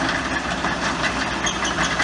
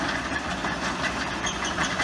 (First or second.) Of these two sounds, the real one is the first